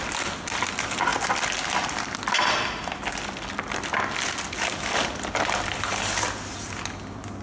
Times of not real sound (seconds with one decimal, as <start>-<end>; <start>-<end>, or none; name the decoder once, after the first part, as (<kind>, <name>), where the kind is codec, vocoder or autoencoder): none